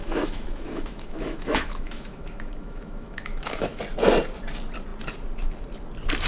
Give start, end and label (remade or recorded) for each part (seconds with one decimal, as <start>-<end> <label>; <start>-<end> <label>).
0.0-3.8 remade; 3.8-6.3 recorded